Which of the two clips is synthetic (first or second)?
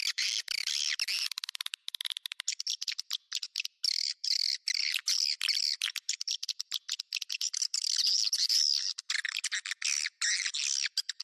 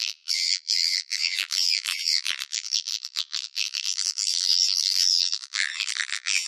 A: second